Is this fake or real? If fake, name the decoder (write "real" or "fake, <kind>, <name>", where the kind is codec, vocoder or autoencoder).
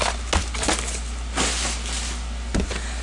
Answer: real